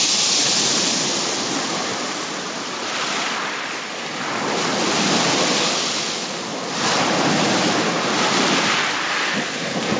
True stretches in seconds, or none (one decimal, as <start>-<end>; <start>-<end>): 0.0-10.0